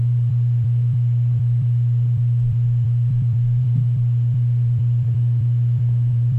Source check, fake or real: fake